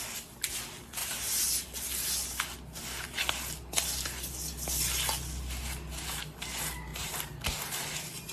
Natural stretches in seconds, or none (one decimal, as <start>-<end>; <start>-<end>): 0.0-1.0; 1.5-6.9; 7.9-8.3